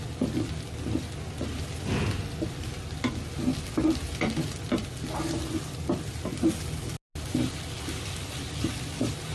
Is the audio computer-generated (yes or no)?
no